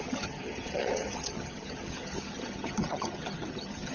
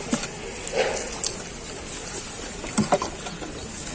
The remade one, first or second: first